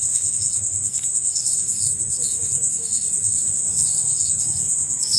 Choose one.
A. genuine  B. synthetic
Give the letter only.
B